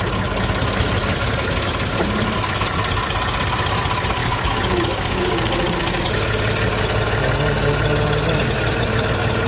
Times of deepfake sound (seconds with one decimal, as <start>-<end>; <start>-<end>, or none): 4.2-6.0